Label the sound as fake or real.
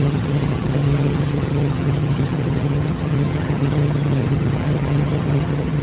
fake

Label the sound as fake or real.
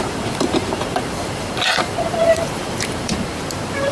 fake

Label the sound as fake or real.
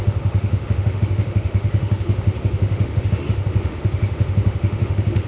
fake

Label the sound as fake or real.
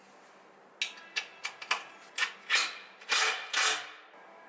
real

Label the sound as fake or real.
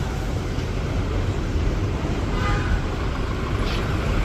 fake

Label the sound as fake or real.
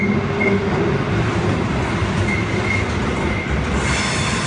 real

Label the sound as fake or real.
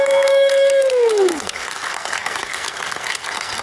fake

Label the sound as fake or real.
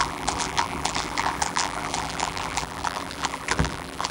fake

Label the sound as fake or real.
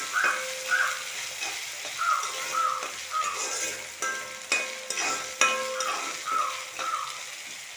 real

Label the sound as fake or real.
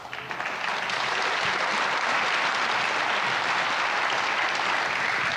real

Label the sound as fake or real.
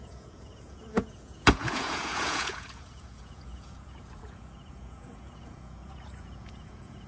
fake